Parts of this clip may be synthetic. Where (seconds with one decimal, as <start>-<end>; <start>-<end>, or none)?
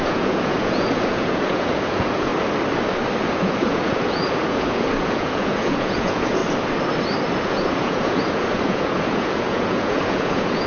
0.0-2.3; 3.2-6.4; 7.4-10.7